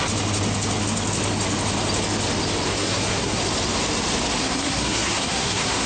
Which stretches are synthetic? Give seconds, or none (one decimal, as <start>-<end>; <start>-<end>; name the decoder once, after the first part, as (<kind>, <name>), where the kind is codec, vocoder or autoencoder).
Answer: 2.7-3.4 (codec, SNAC); 4.4-5.9